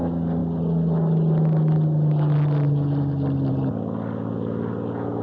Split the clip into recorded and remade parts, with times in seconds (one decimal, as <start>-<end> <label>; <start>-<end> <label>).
0.0-5.2 recorded